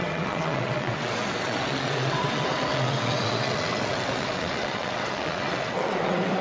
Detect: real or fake fake